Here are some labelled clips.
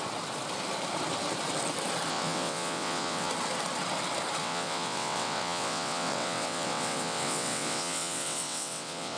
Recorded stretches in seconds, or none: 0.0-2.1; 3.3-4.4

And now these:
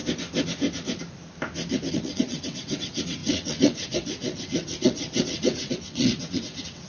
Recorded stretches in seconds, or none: 0.0-1.9

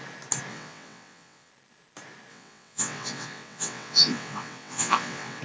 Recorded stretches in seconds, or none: 0.0-0.5; 1.5-2.3

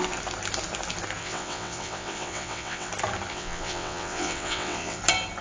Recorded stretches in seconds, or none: 0.0-1.2; 2.9-3.3; 5.0-5.4

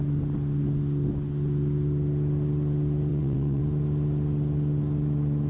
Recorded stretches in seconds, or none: 0.0-3.1; 3.6-5.5

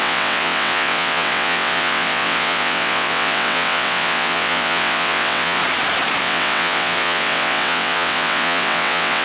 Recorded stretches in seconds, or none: 5.6-6.2

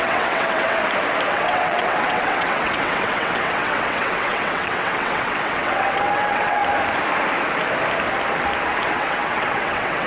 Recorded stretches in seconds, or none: 0.8-1.3; 6.6-8.9